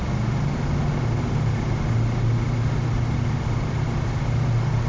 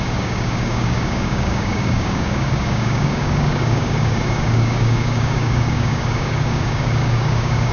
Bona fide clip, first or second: first